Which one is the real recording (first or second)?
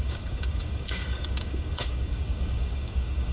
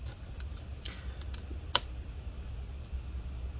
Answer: second